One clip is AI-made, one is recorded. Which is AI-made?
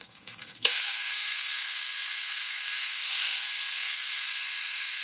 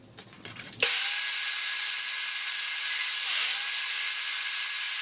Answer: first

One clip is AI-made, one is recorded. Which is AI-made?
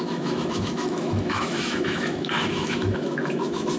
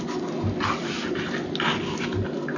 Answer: first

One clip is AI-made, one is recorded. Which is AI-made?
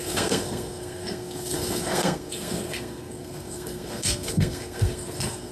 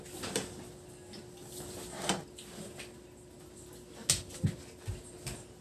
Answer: first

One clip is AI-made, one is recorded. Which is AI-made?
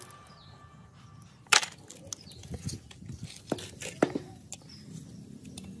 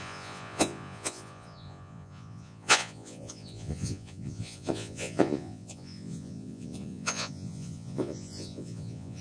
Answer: second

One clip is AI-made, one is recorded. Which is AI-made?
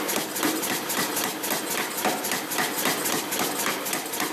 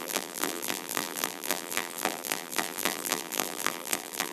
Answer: second